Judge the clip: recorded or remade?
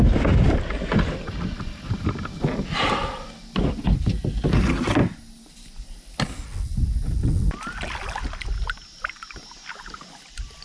recorded